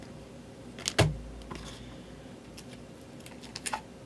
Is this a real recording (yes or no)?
yes